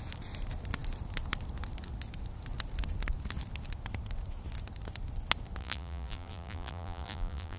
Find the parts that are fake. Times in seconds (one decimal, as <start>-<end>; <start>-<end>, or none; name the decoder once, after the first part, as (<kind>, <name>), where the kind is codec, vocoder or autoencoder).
5.6-7.6 (vocoder, BigVGAN v2)